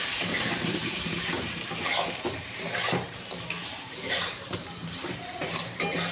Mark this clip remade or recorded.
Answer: remade